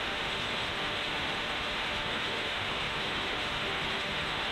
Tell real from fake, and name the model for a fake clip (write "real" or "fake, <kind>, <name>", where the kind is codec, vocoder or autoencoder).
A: fake, autoencoder, DAC-VAE